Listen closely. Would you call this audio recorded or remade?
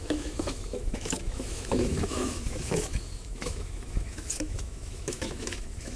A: remade